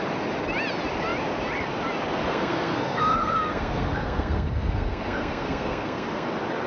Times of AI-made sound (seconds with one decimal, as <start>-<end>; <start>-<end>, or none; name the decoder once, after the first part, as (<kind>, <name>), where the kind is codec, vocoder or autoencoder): 2.3-6.3 (codec, SNAC)